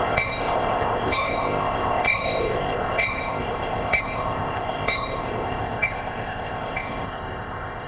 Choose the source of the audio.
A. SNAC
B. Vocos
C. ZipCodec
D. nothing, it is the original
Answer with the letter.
C